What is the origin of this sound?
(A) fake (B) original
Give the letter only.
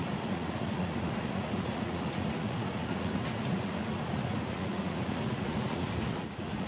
A